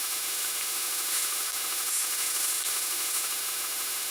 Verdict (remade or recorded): remade